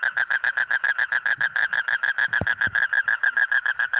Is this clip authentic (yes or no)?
no